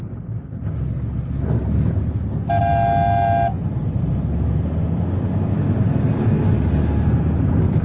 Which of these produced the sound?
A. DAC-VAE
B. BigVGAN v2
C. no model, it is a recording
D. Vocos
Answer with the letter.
C